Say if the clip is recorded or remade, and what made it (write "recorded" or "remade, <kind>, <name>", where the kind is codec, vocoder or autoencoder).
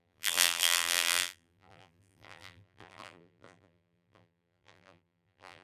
remade, vocoder, BigVGAN v2